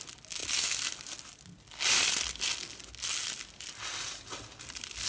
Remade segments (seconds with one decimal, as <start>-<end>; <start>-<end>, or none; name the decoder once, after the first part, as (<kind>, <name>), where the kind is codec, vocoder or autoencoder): none

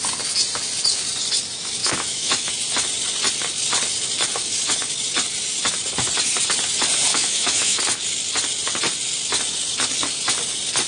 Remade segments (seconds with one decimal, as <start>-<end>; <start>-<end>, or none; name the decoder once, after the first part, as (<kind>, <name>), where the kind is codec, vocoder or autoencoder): 1.8-2.5 (autoencoder, DAC-VAE); 7.1-7.8

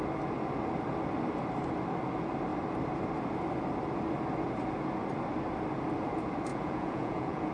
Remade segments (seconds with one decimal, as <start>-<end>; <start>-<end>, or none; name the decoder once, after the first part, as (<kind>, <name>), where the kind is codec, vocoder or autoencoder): 6.5-7.5 (vocoder, Vocos)

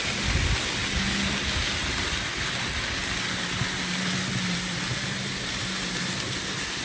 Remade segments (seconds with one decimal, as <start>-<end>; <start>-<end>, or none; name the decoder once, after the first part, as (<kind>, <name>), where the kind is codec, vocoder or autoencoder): 4.9-5.4 (vocoder, BigVGAN v2)